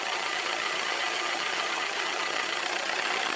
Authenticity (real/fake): fake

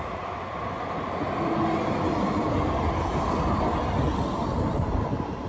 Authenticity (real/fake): real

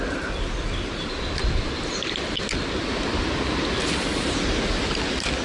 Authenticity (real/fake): real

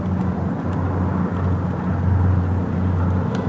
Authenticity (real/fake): real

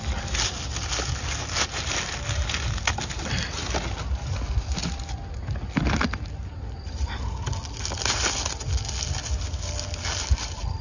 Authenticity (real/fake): real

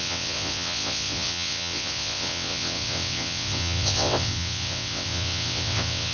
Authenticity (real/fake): fake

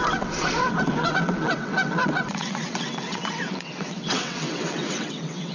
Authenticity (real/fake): fake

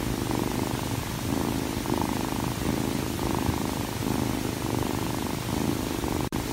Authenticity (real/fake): fake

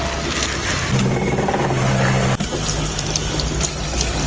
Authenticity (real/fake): real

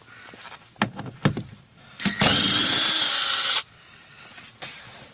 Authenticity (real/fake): real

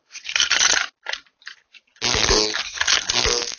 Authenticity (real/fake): real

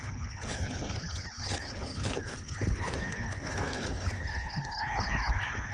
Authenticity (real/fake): fake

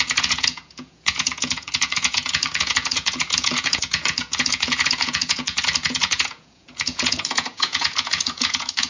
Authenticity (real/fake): fake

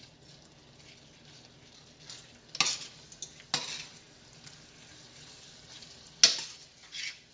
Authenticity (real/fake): real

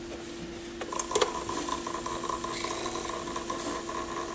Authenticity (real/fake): real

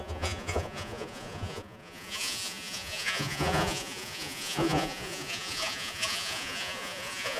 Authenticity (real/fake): fake